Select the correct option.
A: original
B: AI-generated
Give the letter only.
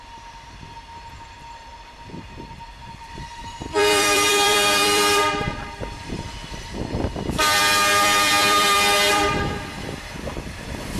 B